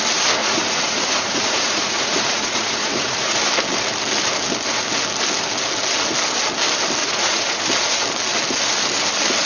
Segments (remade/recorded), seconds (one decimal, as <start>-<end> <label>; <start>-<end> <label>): 0.0-0.4 recorded; 0.4-3.3 remade; 3.3-7.0 recorded; 7.0-7.6 remade; 7.6-9.4 recorded